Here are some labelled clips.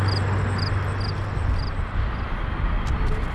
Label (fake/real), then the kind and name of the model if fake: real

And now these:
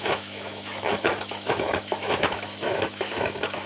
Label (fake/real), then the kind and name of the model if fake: fake, autoencoder, DAC-VAE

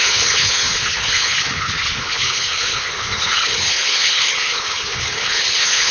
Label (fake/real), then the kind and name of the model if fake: fake, codec, HILCodec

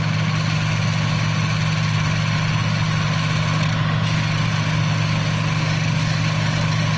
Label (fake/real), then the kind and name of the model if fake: real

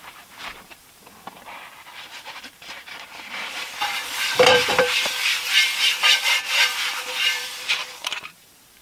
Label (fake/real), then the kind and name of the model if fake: fake, vocoder, BigVGAN v2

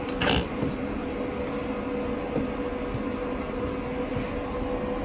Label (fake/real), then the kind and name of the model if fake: real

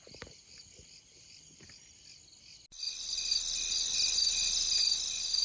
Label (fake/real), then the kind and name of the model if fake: real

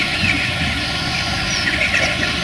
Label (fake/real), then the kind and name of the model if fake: fake, vocoder, Vocos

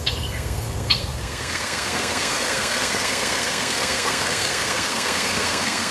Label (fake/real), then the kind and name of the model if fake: fake, codec, SNAC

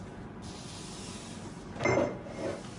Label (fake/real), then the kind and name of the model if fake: real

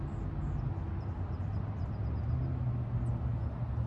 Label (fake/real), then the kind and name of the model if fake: real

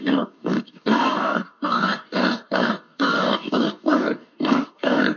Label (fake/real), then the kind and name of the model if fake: fake, codec, DAC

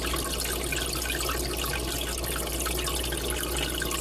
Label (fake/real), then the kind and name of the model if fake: real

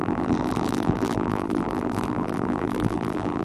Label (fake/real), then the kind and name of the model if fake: fake, vocoder, BigVGAN v2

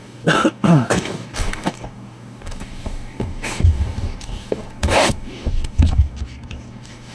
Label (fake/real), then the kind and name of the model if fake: fake, codec, DAC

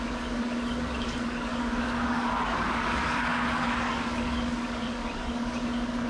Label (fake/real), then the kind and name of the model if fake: fake, codec, DAC